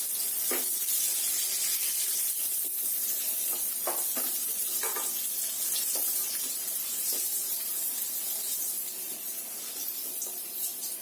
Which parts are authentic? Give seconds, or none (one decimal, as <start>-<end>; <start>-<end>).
0.0-11.0